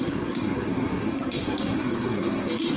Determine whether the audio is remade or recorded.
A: remade